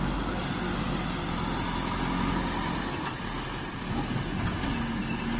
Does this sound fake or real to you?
real